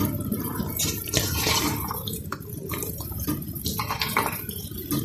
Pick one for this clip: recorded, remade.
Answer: remade